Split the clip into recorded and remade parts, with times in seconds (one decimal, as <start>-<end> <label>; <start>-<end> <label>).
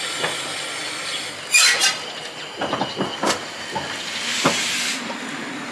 0.0-5.7 recorded